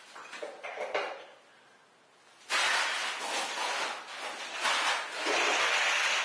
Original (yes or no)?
yes